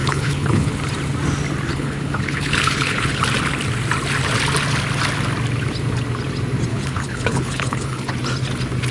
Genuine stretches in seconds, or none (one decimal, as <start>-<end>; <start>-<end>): 0.7-1.7; 3.2-6.7; 8.1-8.9